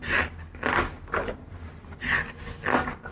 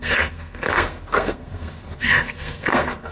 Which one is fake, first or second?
second